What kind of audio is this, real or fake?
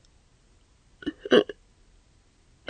real